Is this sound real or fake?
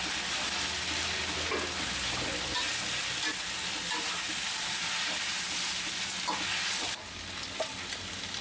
real